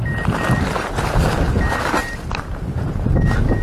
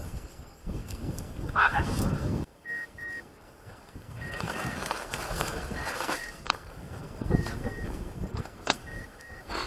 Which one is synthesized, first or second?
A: second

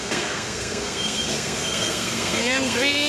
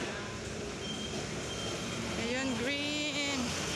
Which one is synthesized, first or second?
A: first